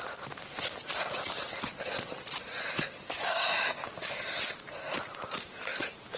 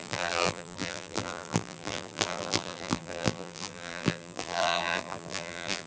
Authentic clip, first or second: first